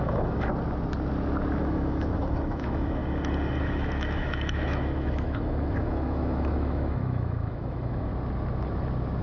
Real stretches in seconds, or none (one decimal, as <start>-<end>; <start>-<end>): 0.5-1.6; 3.0-3.6; 8.1-9.2